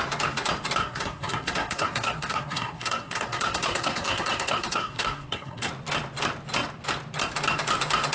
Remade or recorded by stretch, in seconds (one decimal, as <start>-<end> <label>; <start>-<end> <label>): 0.0-0.8 recorded; 0.8-5.7 remade; 5.7-8.1 recorded